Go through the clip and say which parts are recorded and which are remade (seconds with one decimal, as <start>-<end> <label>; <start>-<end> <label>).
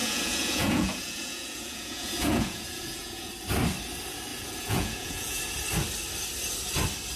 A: 0.0-3.3 remade; 3.3-4.3 recorded; 4.3-5.4 remade; 5.4-7.2 recorded